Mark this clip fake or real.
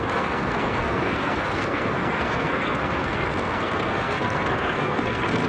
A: fake